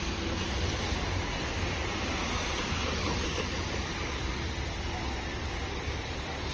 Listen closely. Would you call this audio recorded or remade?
recorded